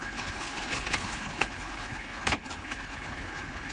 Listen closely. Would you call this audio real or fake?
fake